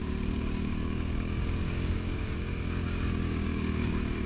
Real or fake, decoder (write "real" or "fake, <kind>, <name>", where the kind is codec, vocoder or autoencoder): fake, codec, DAC